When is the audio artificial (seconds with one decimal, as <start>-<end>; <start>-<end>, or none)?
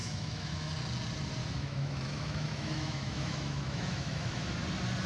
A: 0.0-0.7; 1.4-4.5